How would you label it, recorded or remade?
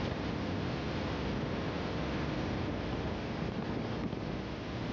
recorded